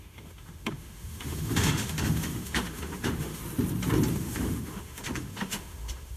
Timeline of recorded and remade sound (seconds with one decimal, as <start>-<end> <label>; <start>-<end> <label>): 0.0-3.4 remade; 3.4-4.1 recorded; 4.1-6.2 remade